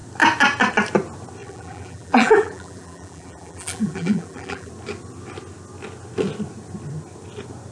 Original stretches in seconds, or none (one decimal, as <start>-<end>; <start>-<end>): 0.0-1.4; 4.7-7.7